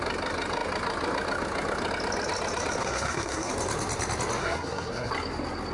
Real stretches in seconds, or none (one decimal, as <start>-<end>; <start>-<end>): 0.0-2.8; 3.5-4.4; 5.1-5.7